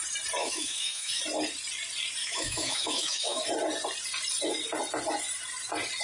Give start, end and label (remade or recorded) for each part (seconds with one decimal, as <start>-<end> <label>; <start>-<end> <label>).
0.0-0.4 recorded; 0.4-1.2 remade; 1.2-2.2 recorded; 2.2-3.4 remade; 3.4-6.0 recorded